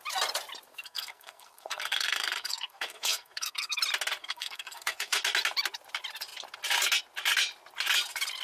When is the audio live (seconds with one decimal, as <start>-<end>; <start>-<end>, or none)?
0.0-0.7; 3.8-4.2; 5.2-8.4